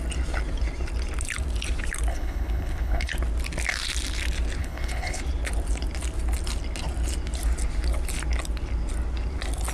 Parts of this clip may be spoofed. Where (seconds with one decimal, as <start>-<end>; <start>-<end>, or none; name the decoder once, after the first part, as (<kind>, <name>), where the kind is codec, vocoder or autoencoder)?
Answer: 2.1-3.1 (codec, HILCodec); 4.6-5.2